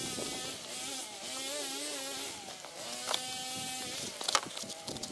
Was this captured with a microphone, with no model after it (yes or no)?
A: yes